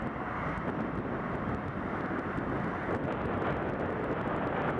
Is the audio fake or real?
real